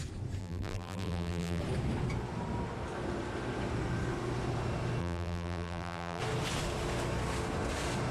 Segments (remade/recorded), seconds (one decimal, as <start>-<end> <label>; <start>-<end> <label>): 0.0-0.4 recorded; 0.4-1.6 remade; 1.6-5.0 recorded; 5.0-6.2 remade; 6.2-8.1 recorded